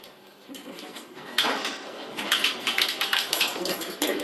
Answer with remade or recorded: remade